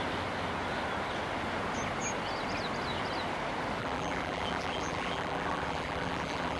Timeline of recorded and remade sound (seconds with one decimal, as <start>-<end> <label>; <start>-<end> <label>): 0.0-3.8 recorded; 3.8-6.6 remade